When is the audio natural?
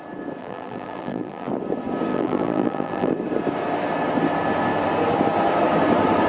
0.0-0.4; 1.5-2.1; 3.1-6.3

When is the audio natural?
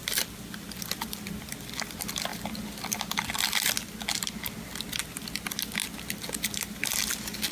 1.5-7.5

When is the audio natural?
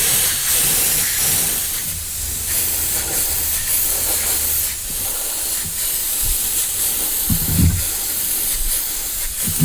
0.0-6.0; 7.8-9.6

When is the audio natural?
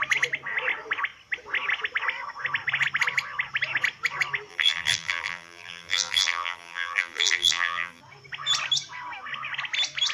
0.0-4.5; 8.0-10.1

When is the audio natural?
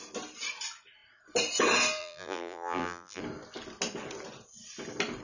0.0-2.0; 3.2-5.2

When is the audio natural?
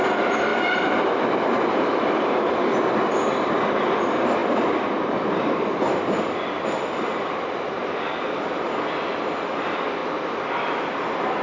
7.8-9.3; 10.0-10.6